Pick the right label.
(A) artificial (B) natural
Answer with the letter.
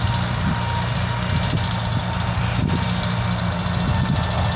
B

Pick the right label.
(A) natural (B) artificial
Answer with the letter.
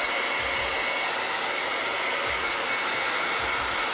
A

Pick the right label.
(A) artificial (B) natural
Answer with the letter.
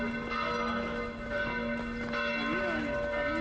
B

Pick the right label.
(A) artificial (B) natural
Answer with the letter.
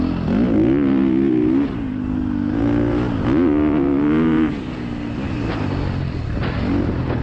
B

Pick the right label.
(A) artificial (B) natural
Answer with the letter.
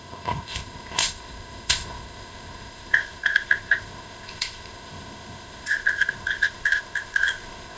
A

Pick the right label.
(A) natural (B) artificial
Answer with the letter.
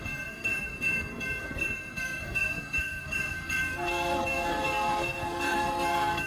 B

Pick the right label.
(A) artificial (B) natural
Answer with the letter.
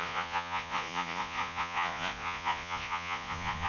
A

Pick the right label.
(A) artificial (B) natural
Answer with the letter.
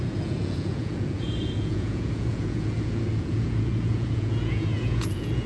A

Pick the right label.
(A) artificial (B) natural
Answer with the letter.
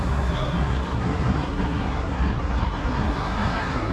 A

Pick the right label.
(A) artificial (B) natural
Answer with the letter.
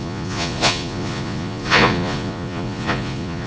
A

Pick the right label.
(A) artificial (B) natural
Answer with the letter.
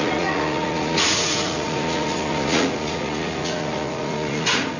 A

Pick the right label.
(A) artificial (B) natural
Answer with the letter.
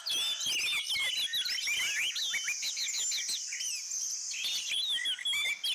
B